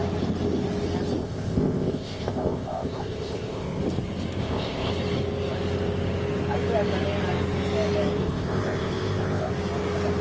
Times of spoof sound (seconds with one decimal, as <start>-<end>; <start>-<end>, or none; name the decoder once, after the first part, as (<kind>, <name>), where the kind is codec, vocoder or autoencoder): 1.2-3.8 (codec, ZipCodec); 4.4-4.9; 8.2-9.5